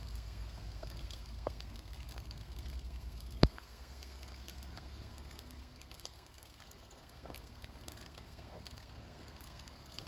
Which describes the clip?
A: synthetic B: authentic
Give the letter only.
A